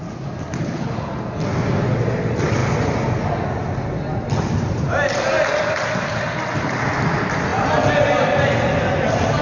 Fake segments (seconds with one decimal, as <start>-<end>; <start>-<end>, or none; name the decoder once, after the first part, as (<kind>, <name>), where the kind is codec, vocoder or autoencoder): 0.6-1.1 (codec, HILCodec)